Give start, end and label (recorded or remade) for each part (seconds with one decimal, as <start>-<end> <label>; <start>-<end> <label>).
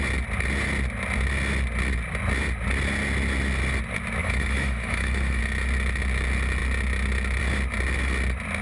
0.0-4.2 recorded; 4.2-5.4 remade; 5.4-8.6 recorded